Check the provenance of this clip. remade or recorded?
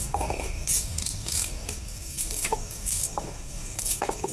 remade